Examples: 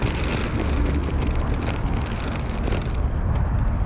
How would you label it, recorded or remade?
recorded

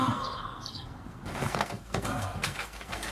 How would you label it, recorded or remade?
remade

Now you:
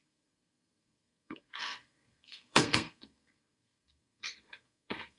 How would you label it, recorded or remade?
remade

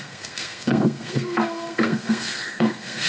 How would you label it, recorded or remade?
remade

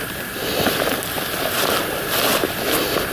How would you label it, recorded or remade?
recorded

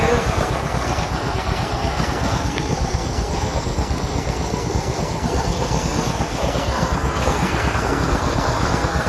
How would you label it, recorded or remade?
remade